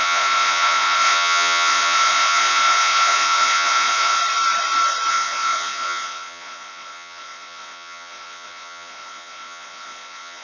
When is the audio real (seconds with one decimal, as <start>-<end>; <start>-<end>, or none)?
4.2-5.1